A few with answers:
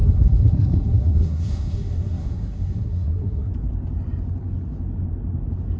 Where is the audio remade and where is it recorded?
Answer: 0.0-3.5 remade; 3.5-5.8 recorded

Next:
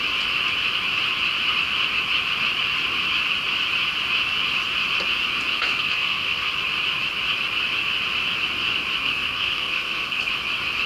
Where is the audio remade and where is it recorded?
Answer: 0.0-5.5 recorded; 5.5-6.5 remade; 6.5-9.0 recorded; 9.0-10.3 remade; 10.3-10.9 recorded

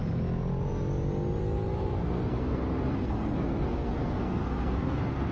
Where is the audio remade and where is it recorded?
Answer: 0.0-1.8 recorded; 1.8-5.3 remade

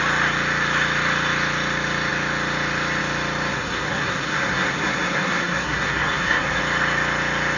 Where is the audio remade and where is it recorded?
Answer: 0.0-3.5 recorded; 3.5-6.6 remade; 6.6-7.6 recorded

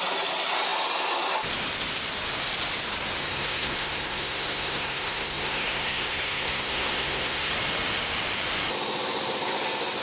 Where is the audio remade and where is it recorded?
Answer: 0.0-3.2 recorded; 3.2-7.5 remade; 7.5-10.0 recorded

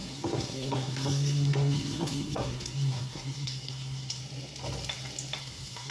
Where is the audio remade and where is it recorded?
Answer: 0.0-4.2 remade; 4.2-5.4 recorded; 5.4-5.9 remade

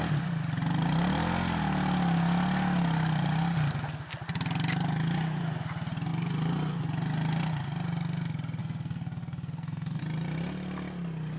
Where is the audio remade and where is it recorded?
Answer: 0.0-8.6 recorded; 8.6-10.0 remade; 10.0-11.4 recorded

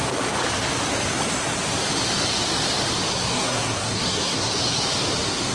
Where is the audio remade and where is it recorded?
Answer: 0.0-3.1 recorded; 3.1-4.5 remade; 4.5-5.5 recorded